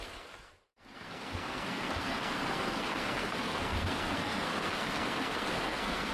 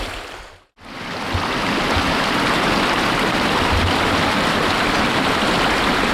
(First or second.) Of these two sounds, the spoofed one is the first